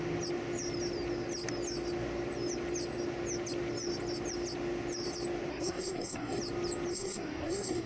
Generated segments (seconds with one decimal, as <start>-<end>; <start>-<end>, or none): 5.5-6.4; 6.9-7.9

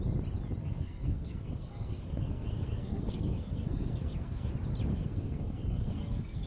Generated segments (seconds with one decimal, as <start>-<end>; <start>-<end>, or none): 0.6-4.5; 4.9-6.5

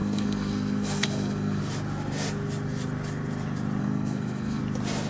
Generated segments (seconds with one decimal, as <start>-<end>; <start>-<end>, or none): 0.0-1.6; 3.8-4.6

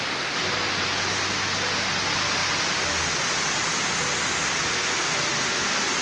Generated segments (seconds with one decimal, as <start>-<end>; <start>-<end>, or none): none

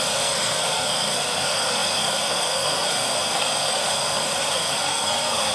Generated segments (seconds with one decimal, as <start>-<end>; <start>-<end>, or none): 0.0-5.5

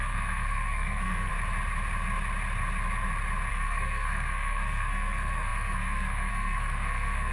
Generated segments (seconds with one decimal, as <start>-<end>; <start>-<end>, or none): 0.0-1.3; 3.5-7.3

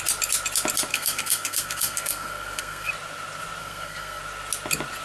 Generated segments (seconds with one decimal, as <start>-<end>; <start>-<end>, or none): 0.9-2.9; 3.6-4.2